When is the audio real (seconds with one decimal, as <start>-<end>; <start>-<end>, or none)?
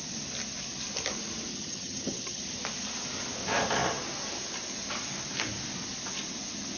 0.0-1.5; 2.4-6.8